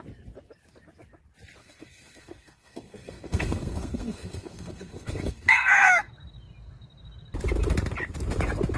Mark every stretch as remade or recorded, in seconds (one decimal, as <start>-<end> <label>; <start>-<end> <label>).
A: 0.0-1.6 recorded; 1.6-6.1 remade; 6.1-8.8 recorded